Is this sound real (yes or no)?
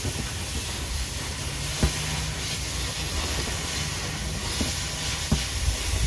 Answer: yes